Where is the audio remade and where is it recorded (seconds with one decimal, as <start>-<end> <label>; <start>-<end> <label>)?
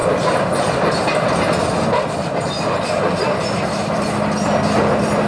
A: 0.0-5.3 recorded